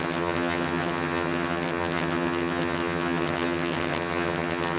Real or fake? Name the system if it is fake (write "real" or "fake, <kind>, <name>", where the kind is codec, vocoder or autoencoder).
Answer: fake, vocoder, HiFi-GAN